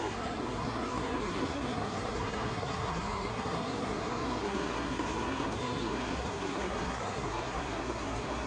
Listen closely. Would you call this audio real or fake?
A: fake